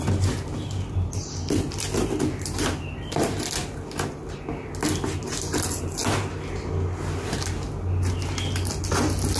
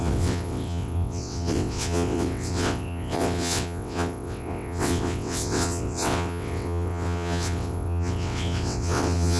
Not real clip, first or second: second